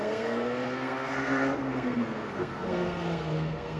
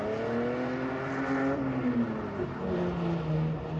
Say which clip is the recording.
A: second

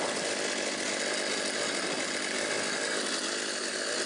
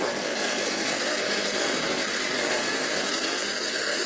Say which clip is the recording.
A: first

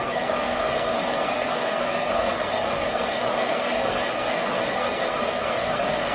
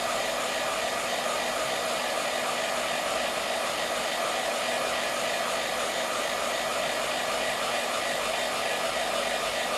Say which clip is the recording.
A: second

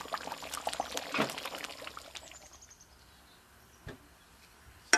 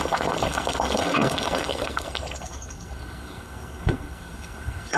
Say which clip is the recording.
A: first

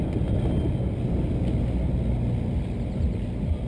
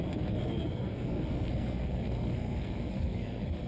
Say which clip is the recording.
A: first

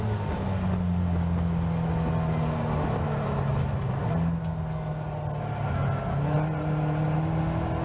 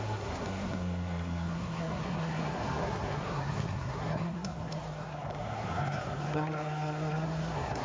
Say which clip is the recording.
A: first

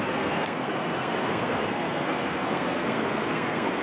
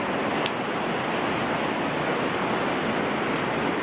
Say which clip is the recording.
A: second